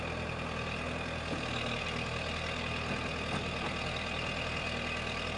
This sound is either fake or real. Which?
real